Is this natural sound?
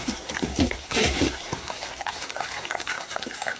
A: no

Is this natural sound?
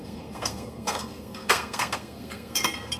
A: no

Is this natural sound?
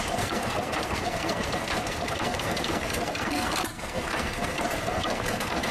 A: no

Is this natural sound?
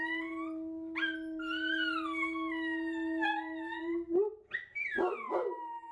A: yes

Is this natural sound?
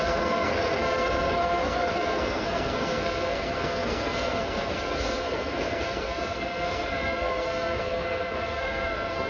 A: no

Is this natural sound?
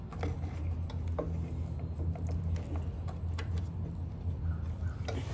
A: yes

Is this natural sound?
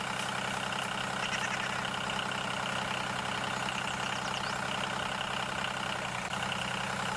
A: yes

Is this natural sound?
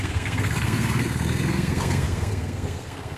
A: no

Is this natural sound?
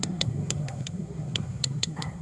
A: no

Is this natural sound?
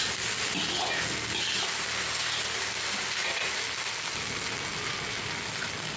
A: yes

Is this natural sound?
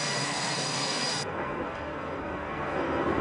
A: no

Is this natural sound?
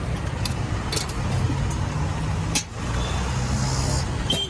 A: yes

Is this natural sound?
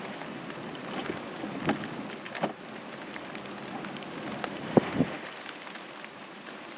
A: yes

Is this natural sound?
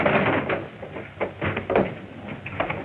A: yes